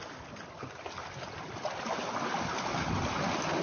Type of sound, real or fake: real